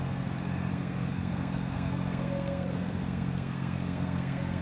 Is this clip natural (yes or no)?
no